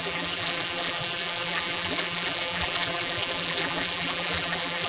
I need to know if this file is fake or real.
fake